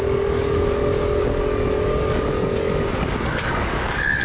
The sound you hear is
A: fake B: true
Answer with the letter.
A